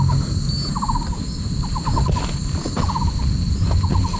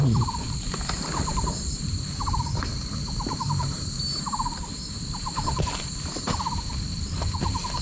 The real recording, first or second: first